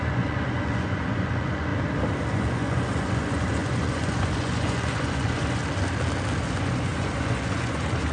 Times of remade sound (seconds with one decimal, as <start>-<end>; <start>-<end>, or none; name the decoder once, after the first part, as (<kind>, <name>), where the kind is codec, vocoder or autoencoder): 0.0-1.7 (vocoder, Vocos); 2.3-5.6; 6.4-8.1